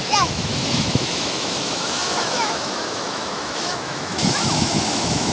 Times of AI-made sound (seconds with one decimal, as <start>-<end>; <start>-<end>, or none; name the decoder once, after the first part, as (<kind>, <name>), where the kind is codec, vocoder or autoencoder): 0.0-5.3 (autoencoder, DAC-VAE)